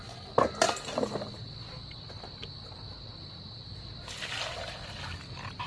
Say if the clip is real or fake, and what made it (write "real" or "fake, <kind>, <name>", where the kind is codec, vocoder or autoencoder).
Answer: real